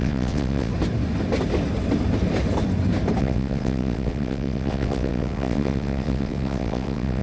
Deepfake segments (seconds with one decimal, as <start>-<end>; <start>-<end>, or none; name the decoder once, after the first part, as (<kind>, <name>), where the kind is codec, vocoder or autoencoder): 0.0-0.7 (vocoder, WaveNeXt); 3.2-7.2